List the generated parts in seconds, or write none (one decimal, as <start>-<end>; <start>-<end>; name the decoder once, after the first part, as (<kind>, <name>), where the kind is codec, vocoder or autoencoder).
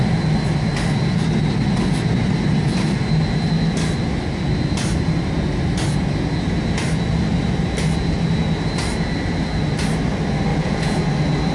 10.5-11.0 (vocoder, Vocos)